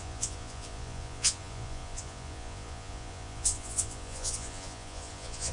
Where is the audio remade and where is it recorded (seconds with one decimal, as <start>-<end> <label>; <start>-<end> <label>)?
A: 0.0-5.5 remade